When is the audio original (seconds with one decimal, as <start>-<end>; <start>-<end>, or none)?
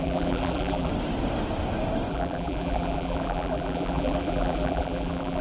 0.9-2.1